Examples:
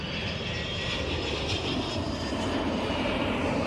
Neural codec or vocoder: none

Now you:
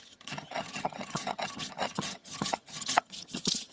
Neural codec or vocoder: vocoder, HiFi-GAN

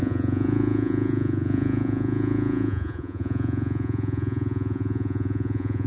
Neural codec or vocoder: vocoder, Vocos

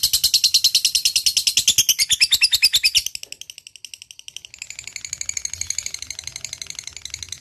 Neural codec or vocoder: none